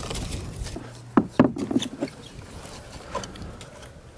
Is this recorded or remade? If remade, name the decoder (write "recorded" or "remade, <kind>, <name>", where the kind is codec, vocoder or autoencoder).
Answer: recorded